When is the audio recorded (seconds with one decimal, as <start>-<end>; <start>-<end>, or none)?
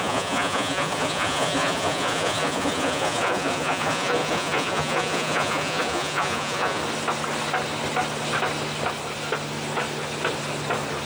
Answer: 6.8-11.1